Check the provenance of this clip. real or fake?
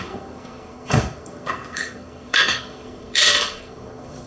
fake